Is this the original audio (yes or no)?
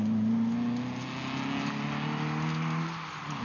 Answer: yes